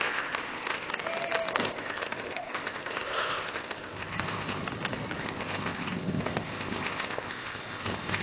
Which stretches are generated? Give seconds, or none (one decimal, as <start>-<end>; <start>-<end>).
0.0-0.9; 1.6-4.6; 5.2-8.2